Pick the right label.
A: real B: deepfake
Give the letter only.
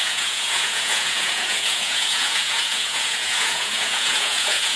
B